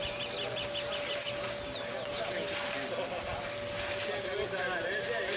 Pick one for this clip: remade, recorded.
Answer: recorded